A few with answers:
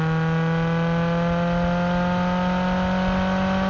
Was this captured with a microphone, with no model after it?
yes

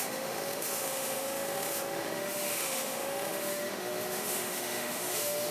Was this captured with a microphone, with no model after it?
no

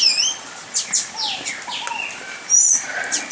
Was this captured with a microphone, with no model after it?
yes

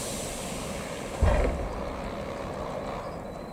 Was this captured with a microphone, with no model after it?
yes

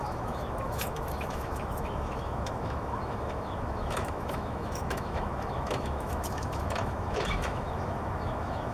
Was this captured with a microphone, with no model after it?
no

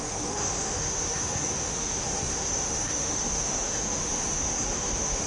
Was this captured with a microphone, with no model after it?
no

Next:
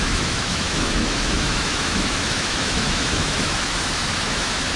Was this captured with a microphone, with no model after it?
no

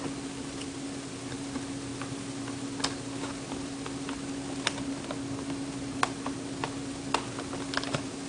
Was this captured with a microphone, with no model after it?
yes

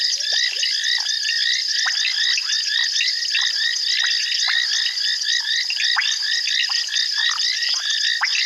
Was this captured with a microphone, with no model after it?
yes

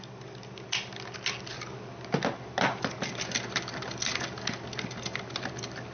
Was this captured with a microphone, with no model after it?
yes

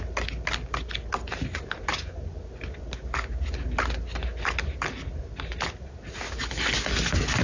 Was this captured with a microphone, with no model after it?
yes